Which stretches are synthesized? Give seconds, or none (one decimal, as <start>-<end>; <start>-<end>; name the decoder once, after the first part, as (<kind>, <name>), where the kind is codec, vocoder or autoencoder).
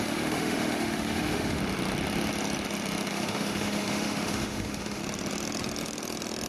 0.0-1.6 (autoencoder, DAC-VAE); 3.1-5.0